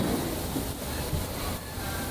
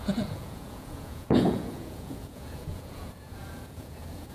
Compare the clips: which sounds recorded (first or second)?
first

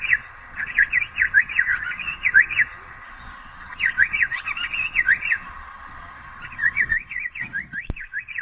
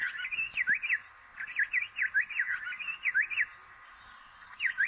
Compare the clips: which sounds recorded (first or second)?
second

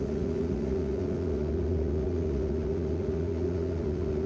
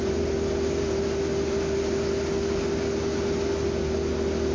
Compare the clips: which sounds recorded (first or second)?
second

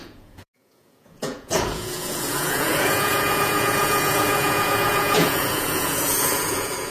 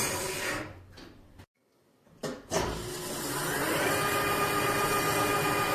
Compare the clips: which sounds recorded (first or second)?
second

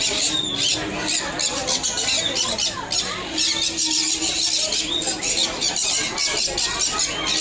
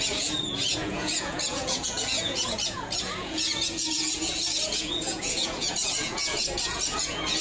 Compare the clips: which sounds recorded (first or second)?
first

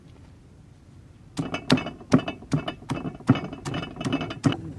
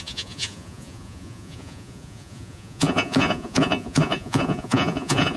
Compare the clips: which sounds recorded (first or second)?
first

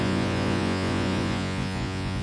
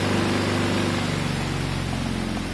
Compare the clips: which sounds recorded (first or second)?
second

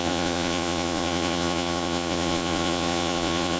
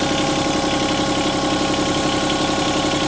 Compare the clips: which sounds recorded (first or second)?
second